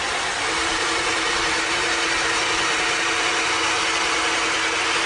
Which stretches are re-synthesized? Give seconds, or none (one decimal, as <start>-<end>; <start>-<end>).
0.6-3.7